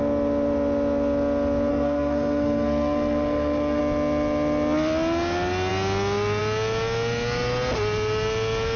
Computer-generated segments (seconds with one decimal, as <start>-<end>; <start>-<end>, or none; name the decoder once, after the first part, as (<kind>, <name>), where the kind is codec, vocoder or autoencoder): 1.7-3.8 (codec, SNAC)